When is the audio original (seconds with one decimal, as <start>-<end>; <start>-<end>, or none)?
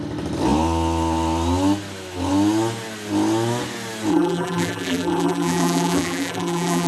0.0-4.1